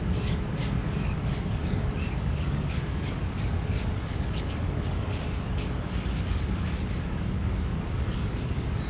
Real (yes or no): no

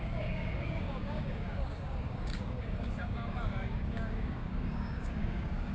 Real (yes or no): no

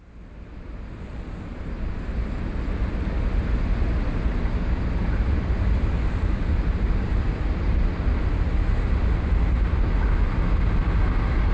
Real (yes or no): yes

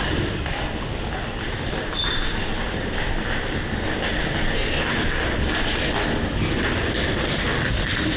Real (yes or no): yes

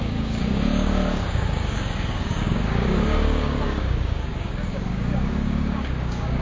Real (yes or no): no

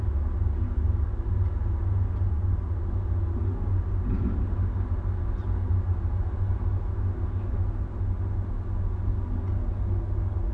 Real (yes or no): yes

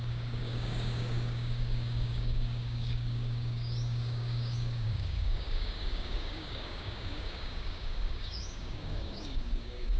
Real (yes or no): no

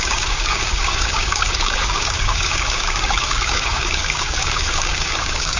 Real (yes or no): no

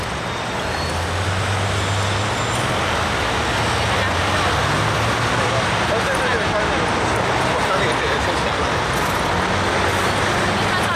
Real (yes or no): yes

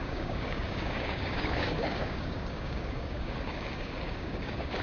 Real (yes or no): no